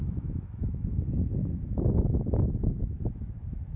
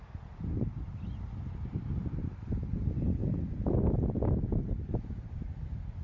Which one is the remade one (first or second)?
first